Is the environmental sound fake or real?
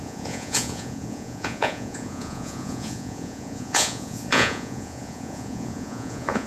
fake